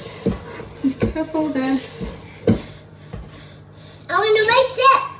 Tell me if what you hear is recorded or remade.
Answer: remade